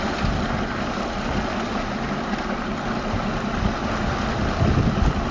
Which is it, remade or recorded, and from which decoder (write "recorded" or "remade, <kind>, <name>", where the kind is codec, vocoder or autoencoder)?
recorded